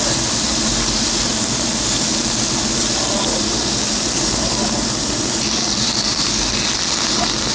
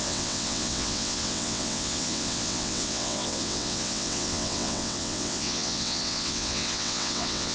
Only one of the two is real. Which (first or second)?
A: first